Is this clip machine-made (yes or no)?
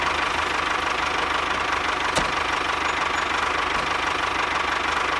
no